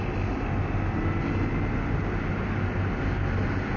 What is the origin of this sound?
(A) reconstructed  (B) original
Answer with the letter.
B